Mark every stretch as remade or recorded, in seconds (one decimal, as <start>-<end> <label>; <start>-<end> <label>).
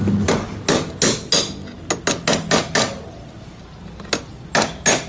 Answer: 0.0-5.1 recorded